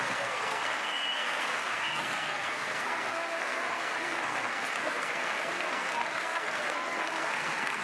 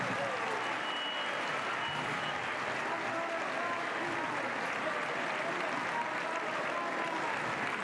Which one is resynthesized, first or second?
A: first